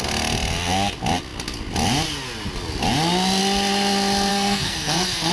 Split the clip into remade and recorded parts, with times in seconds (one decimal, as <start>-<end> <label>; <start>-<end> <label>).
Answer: 0.0-4.3 recorded; 4.3-5.3 remade